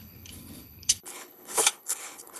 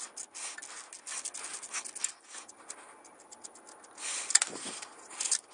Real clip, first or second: second